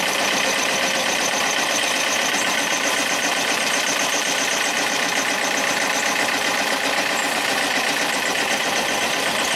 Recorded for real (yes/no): no